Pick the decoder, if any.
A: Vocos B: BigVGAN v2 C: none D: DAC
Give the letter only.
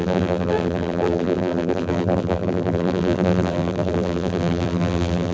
B